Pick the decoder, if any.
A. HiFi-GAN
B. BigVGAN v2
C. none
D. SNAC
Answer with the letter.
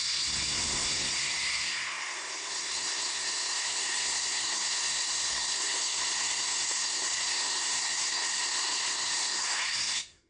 D